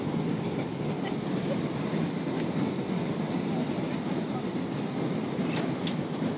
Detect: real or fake real